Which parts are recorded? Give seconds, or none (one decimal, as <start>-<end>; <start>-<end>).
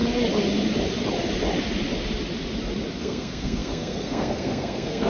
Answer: 0.0-3.0